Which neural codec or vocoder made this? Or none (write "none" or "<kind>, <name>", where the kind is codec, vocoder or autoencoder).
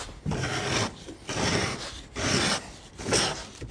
none